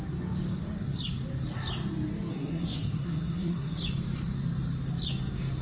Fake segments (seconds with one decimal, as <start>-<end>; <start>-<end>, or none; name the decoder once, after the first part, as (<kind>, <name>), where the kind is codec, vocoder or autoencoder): 2.3-3.8 (codec, SNAC)